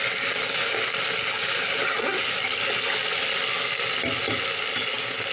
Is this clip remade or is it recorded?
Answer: recorded